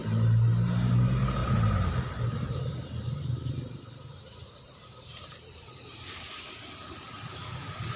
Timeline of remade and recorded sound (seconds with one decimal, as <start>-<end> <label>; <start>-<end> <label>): 0.0-1.4 recorded; 1.4-2.0 remade; 2.0-4.3 recorded; 4.3-6.5 remade; 6.5-7.1 recorded; 7.1-8.0 remade